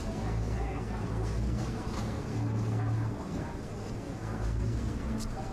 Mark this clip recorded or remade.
remade